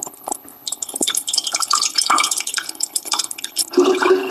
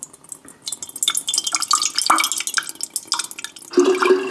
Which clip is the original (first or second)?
second